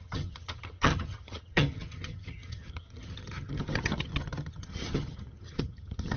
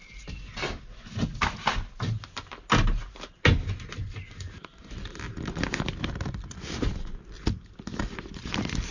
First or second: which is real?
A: second